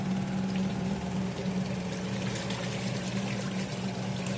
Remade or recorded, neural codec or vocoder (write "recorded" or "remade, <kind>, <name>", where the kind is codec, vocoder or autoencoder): recorded